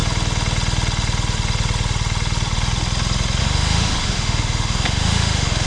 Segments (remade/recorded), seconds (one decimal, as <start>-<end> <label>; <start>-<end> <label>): 0.0-3.4 recorded; 3.4-5.7 remade